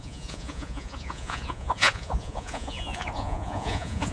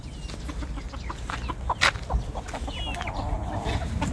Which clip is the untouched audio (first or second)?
second